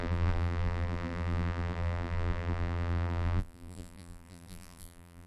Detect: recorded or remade remade